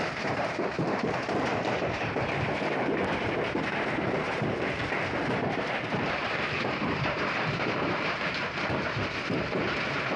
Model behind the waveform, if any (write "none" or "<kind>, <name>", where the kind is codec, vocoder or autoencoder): vocoder, BigVGAN v2